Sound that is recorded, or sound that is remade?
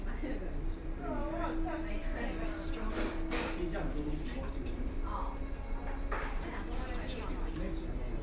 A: recorded